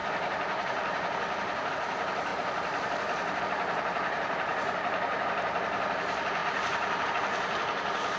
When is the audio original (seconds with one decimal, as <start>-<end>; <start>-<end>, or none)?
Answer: 2.3-3.4